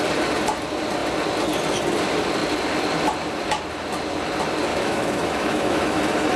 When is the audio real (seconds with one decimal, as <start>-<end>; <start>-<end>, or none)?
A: 0.0-4.7; 6.0-6.4